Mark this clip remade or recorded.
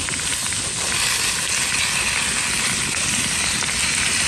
recorded